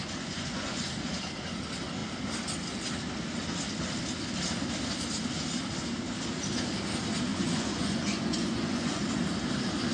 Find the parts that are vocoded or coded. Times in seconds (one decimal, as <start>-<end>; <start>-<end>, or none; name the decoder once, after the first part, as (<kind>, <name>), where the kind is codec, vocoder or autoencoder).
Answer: 0.0-0.9 (vocoder, Vocos); 7.3-9.0